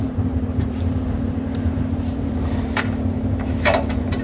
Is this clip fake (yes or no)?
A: yes